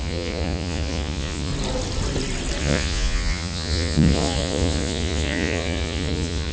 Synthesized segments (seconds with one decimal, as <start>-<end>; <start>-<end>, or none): 0.0-1.5; 2.6-6.5